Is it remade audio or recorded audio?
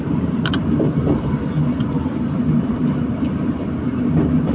remade